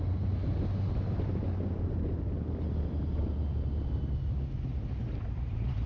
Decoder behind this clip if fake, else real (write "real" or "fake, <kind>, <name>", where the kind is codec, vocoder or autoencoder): real